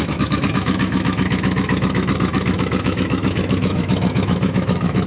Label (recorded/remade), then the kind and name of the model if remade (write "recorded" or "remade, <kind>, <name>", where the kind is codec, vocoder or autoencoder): remade, autoencoder, DAC-VAE